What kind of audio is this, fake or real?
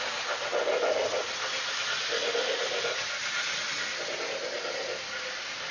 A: real